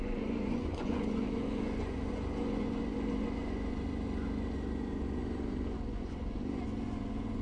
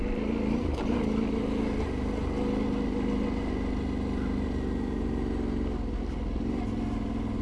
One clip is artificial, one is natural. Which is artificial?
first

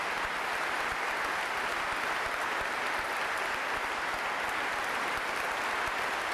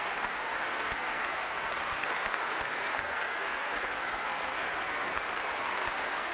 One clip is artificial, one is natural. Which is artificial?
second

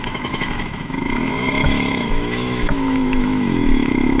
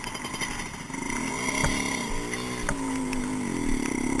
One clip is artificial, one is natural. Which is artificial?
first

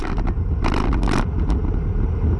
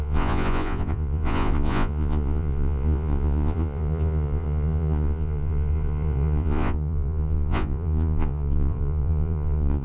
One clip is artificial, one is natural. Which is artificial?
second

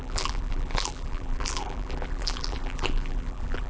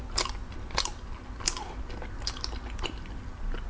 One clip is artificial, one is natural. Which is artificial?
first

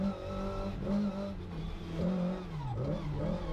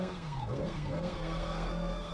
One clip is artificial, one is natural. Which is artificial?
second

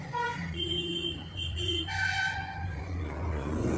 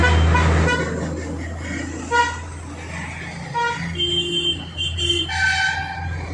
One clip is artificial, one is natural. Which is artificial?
first